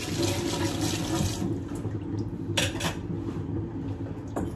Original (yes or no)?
yes